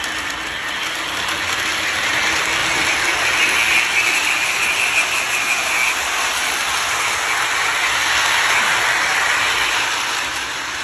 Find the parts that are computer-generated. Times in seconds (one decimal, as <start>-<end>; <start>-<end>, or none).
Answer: none